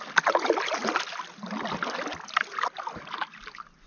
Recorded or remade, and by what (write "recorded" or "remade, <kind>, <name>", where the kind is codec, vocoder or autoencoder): recorded